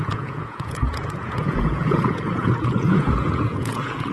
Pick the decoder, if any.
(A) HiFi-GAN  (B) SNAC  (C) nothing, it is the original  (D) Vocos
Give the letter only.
D